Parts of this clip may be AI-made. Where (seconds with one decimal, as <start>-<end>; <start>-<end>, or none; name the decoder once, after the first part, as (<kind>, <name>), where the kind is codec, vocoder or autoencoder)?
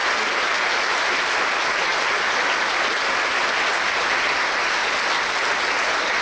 none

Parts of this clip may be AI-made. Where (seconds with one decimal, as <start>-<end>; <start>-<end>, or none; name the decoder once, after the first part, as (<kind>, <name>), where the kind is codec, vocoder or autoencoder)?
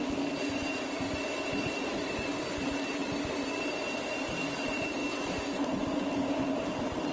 none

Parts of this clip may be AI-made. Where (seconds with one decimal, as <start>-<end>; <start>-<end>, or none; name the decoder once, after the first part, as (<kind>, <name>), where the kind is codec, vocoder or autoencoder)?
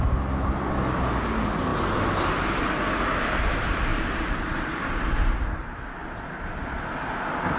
3.9-5.4 (vocoder, BigVGAN v2)